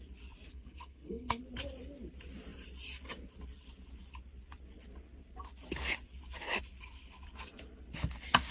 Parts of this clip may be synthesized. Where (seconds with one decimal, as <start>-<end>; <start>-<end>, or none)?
0.5-1.4